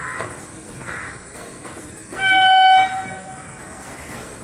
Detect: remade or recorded remade